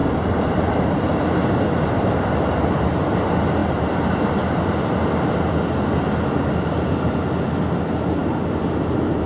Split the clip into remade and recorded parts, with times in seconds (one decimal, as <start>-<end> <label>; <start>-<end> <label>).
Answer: 0.0-1.5 remade; 1.5-3.6 recorded; 3.6-4.7 remade; 4.7-9.3 recorded

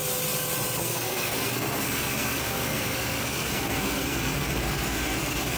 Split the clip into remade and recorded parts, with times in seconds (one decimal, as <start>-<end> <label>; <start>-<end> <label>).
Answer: 0.0-0.8 recorded; 0.8-5.6 remade

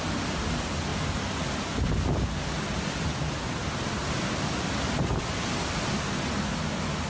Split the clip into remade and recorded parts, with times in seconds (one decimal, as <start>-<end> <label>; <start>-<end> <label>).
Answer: 0.0-7.1 recorded

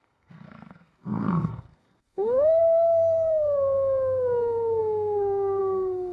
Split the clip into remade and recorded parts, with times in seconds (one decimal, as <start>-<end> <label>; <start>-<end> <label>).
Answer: 0.0-6.1 remade

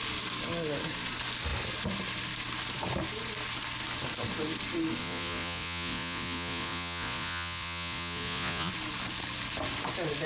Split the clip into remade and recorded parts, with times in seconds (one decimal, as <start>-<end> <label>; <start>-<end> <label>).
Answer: 0.0-5.0 recorded; 5.0-8.7 remade; 8.7-10.3 recorded

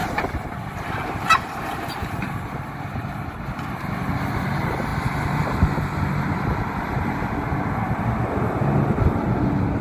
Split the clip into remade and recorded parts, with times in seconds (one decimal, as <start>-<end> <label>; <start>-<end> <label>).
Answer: 0.0-2.5 remade; 2.5-9.8 recorded

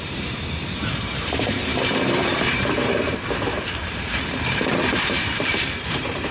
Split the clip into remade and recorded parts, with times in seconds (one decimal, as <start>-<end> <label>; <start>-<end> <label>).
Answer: 0.0-6.3 remade